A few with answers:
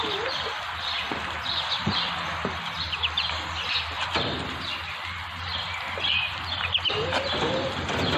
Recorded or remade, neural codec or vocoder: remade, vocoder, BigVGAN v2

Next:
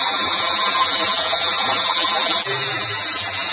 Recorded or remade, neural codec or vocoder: remade, vocoder, BigVGAN v2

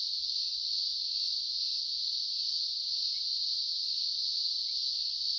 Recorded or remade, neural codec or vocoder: recorded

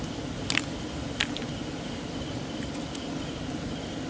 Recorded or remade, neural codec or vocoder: recorded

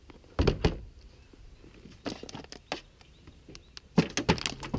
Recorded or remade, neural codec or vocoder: recorded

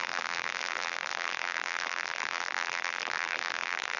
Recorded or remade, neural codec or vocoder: remade, vocoder, BigVGAN v2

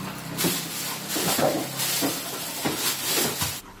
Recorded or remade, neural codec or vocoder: recorded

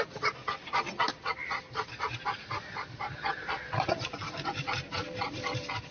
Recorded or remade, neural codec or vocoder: remade, vocoder, BigVGAN v2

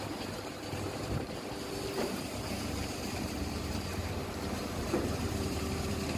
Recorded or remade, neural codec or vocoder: remade, vocoder, BigVGAN v2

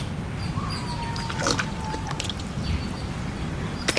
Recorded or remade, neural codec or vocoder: recorded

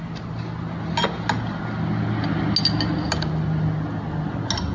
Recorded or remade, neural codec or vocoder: recorded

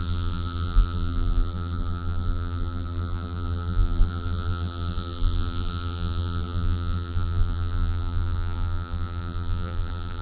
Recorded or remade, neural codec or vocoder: remade, vocoder, BigVGAN v2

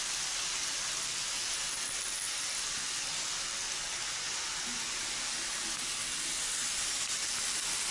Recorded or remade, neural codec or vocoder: recorded